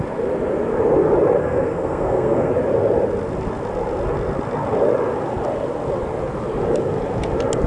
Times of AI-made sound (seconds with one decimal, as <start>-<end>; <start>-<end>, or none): 1.4-2.5